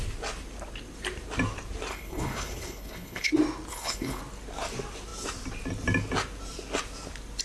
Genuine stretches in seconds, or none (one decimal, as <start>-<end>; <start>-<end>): 0.0-1.9; 3.3-3.7; 4.2-7.4